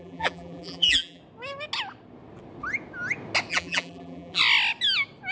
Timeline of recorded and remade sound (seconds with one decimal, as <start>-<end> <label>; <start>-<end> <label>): 0.0-1.2 remade; 1.2-3.5 recorded; 3.5-4.4 remade; 4.4-5.3 recorded